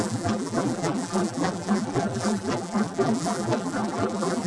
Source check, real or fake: fake